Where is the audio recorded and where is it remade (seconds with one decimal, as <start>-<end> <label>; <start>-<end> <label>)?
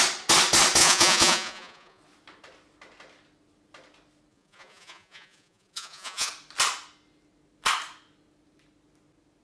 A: 0.0-0.8 recorded; 0.8-2.0 remade; 2.0-4.3 recorded; 4.3-6.3 remade; 6.3-9.4 recorded